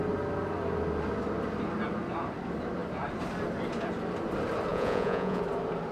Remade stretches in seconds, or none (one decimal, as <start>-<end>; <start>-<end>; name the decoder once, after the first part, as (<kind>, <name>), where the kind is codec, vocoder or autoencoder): 4.7-5.4 (vocoder, Vocos)